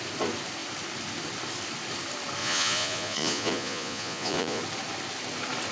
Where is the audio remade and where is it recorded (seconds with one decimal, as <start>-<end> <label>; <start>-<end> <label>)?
0.0-2.4 recorded; 2.4-4.6 remade; 4.6-5.7 recorded